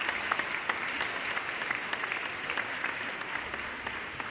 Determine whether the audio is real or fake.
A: real